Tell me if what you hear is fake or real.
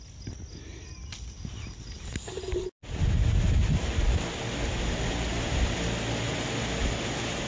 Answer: real